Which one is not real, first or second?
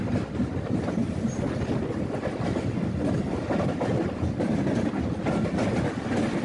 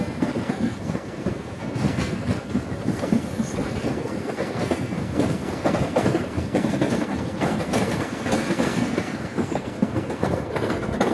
second